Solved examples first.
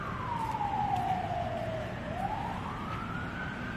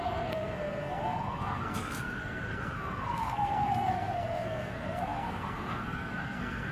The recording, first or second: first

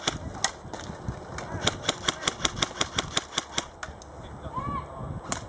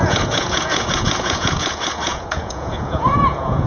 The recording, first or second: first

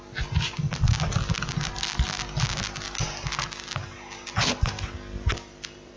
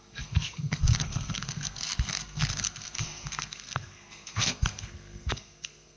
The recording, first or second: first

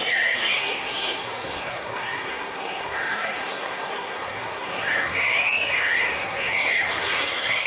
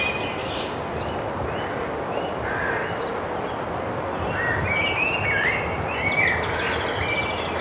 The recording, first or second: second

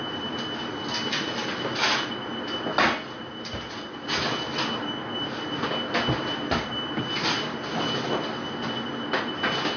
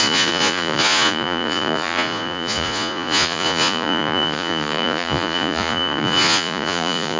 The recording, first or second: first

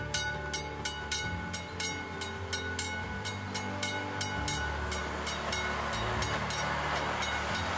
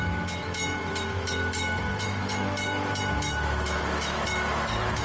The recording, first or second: first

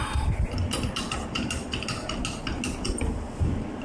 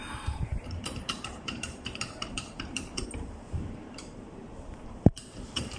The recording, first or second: first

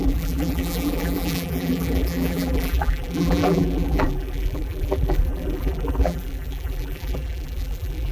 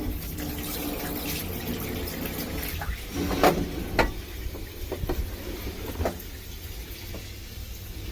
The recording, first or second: second